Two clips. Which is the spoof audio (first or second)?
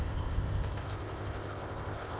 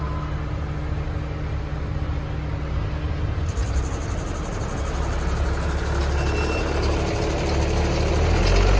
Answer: first